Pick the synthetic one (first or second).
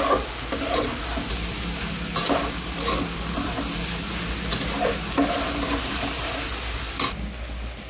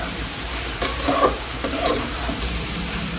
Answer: second